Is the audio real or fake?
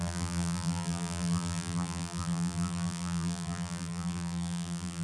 fake